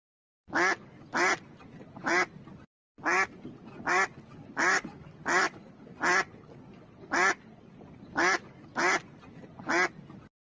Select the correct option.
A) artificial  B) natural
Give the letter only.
B